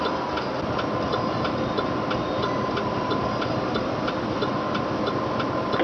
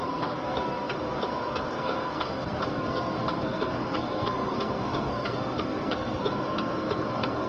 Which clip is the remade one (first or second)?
second